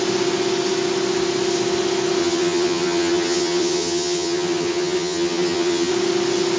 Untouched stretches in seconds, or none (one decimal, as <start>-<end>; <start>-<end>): 0.0-2.2; 5.9-6.6

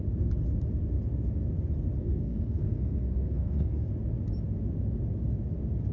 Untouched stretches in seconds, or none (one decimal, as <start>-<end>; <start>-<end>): 0.0-2.0; 3.9-5.9